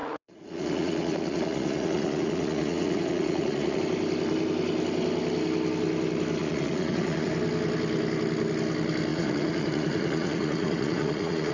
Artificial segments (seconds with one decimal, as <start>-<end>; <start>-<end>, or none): 0.0-3.8; 6.4-7.3; 9.1-11.5